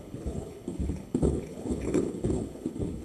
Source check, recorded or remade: remade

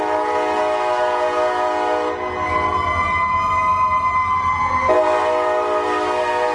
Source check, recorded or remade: recorded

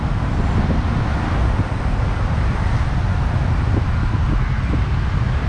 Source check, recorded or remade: recorded